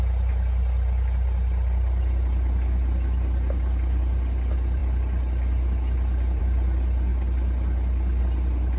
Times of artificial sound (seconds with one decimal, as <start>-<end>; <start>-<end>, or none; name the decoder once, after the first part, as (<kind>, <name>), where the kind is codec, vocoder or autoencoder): none